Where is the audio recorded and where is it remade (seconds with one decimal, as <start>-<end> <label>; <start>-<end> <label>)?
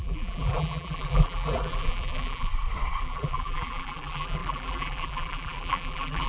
0.0-2.5 remade; 2.5-3.0 recorded; 3.0-6.3 remade